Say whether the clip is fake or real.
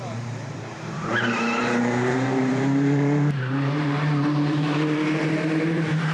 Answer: fake